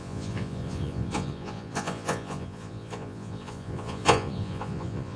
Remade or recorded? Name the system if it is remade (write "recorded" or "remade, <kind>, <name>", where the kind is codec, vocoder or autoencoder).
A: remade, vocoder, Vocos